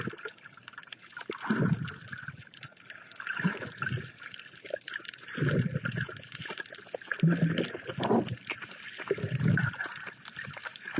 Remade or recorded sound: recorded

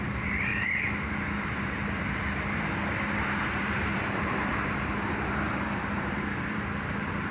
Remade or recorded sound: remade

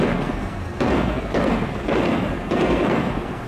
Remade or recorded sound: remade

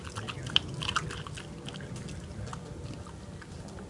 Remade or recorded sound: recorded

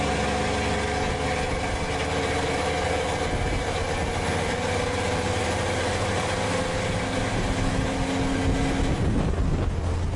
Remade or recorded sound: recorded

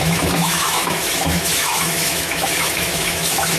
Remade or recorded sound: remade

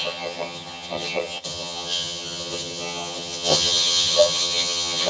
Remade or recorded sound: remade